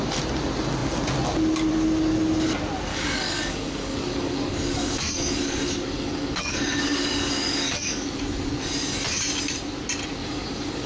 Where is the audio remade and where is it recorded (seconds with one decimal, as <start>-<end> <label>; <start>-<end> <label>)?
0.0-2.9 recorded; 2.9-8.2 remade; 8.2-10.2 recorded; 10.2-10.9 remade